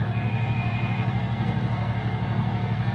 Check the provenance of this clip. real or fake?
fake